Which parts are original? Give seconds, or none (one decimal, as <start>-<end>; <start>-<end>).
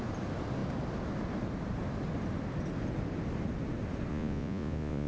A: 0.0-4.1